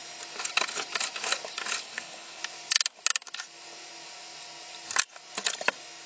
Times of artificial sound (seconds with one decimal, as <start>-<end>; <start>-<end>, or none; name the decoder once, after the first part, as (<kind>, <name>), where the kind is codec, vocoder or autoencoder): 1.8-2.4 (codec, HILCodec)